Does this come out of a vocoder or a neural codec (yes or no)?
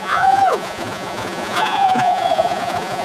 yes